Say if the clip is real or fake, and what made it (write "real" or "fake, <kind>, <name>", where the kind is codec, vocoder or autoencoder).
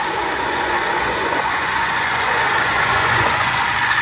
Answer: fake, vocoder, Vocos